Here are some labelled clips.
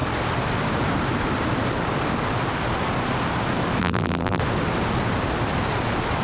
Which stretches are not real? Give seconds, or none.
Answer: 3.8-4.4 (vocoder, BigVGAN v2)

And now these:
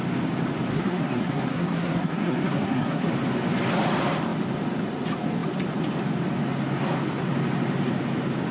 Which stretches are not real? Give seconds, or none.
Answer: 0.7-3.1 (codec, SNAC)

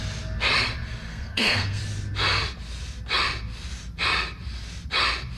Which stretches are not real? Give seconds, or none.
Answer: 1.1-1.8 (codec, SNAC)

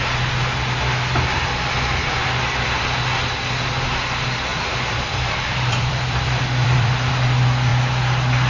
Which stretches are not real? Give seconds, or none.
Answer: 2.2-2.8 (vocoder, BigVGAN v2); 4.5-7.1

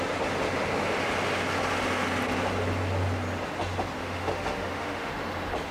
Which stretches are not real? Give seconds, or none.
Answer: 4.0-5.1 (autoencoder, DAC-VAE)

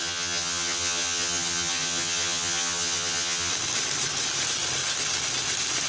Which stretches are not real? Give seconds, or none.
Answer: 0.0-3.5 (vocoder, HiFi-GAN)